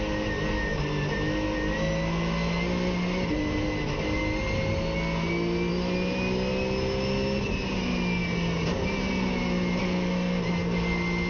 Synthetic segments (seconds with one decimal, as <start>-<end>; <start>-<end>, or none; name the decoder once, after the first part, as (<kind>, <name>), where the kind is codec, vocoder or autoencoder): none